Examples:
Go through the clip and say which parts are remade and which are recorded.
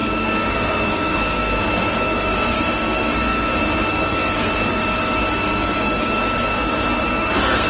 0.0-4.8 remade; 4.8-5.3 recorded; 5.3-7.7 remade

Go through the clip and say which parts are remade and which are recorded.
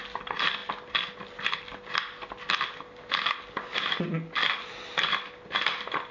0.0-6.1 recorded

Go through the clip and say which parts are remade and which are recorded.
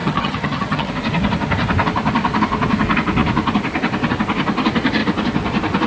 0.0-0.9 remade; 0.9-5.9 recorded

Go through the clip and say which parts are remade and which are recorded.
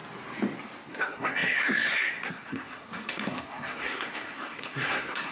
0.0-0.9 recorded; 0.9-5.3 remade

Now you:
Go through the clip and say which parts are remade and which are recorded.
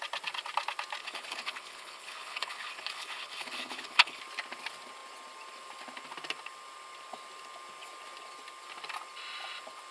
0.0-1.0 recorded; 1.0-4.2 remade; 4.2-9.9 recorded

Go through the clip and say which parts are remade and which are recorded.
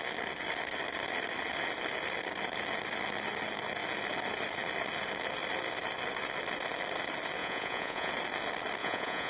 0.0-7.4 recorded; 7.4-8.1 remade; 8.1-8.8 recorded; 8.8-9.3 remade